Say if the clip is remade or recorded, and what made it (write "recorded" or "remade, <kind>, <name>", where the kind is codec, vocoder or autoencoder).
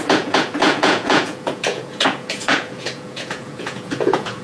remade, vocoder, Vocos